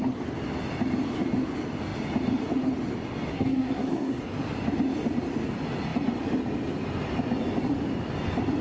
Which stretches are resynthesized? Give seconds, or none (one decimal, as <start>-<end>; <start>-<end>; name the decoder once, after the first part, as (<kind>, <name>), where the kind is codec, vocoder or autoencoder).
3.3-4.2 (codec, SNAC)